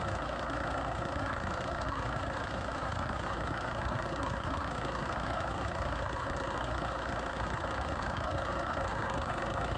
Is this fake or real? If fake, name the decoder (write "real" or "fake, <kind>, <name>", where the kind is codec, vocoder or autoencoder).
fake, codec, SNAC